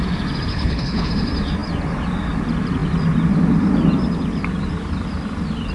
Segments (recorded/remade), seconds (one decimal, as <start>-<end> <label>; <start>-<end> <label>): 0.0-0.5 recorded; 0.5-1.1 remade; 1.1-5.7 recorded